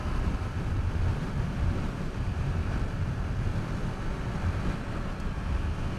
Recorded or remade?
recorded